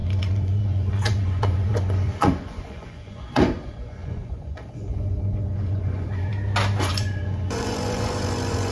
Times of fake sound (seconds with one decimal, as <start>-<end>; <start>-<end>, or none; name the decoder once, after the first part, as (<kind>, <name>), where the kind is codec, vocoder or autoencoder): 0.0-6.3 (vocoder, Vocos); 6.8-8.7